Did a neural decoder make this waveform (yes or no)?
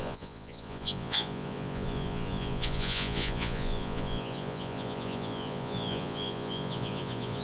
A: yes